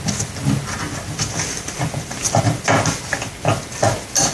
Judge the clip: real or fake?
real